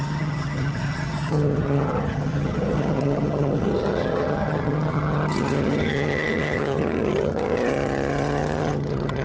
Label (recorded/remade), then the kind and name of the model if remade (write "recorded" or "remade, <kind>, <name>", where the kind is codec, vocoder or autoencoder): remade, vocoder, HiFi-GAN